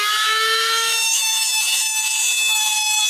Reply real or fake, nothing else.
fake